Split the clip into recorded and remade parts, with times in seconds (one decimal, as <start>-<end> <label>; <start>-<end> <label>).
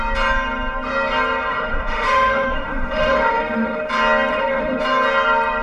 0.0-1.5 recorded; 1.5-3.9 remade; 3.9-4.3 recorded; 4.3-4.8 remade; 4.8-5.6 recorded